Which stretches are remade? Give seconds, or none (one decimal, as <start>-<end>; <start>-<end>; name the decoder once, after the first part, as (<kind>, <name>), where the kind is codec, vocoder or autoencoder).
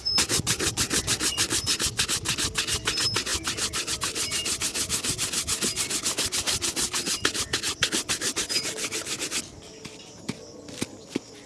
none